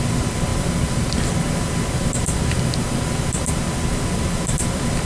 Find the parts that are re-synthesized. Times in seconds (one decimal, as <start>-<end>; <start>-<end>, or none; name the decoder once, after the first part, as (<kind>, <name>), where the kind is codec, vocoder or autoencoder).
0.0-5.0 (vocoder, BigVGAN v2)